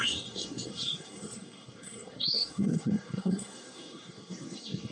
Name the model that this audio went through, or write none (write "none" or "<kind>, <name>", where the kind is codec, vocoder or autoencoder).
codec, SNAC